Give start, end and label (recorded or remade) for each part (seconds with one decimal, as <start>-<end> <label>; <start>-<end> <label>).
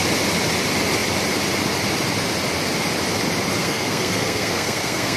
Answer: 0.0-3.6 recorded; 3.6-5.2 remade